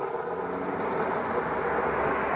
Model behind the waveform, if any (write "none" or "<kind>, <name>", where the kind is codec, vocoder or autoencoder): none